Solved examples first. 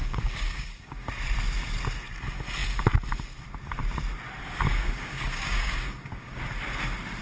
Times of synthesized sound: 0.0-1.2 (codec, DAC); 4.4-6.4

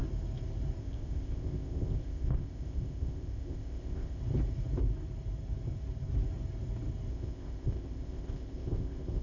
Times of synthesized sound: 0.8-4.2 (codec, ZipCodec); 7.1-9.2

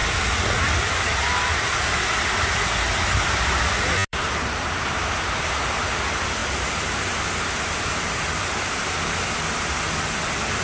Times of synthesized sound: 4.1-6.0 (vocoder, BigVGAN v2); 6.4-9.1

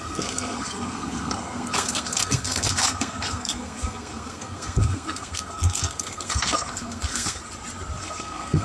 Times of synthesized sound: 0.0-7.4 (codec, SNAC); 8.0-8.6